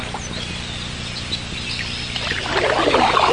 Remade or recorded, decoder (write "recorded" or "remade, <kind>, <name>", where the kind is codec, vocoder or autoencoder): recorded